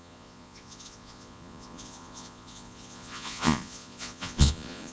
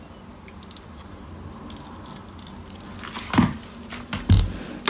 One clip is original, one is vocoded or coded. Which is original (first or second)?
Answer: second